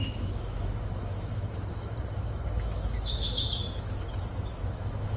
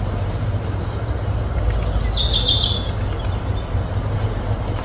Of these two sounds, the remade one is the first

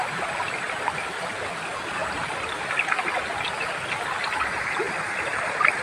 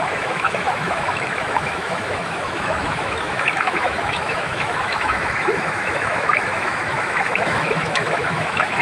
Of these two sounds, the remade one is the second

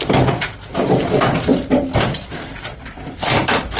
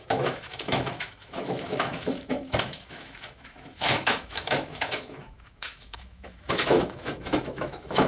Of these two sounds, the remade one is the second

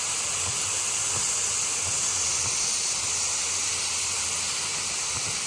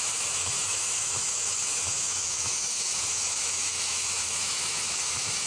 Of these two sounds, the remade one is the second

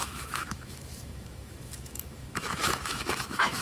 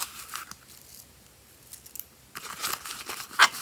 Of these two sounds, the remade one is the first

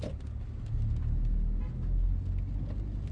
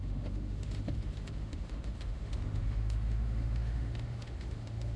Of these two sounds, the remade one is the second